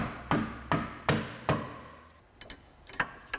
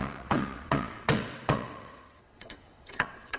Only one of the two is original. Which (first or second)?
first